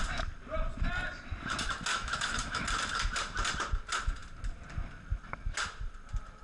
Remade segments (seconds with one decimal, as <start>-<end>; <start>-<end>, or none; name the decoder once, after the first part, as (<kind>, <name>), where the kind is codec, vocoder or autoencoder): 1.9-2.6 (autoencoder, DAC-VAE)